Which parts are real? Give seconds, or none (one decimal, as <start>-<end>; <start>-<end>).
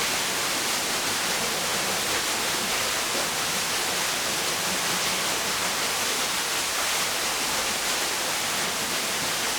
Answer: 0.0-9.6